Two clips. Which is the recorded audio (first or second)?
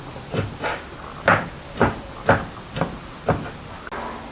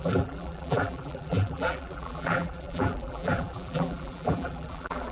first